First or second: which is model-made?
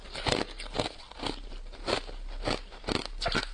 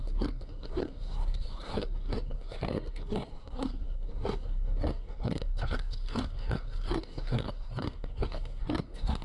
second